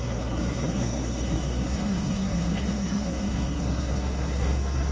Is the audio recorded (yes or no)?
no